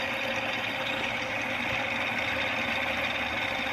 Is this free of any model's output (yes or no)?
yes